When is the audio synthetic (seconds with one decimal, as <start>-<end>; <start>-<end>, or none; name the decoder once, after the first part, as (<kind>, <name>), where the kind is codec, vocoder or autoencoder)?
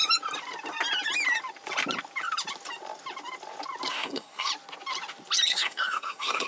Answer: 3.9-4.5 (codec, SNAC); 5.5-6.5